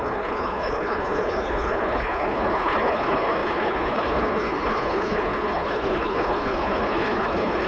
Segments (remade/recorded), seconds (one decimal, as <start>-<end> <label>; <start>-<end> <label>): 0.0-7.7 remade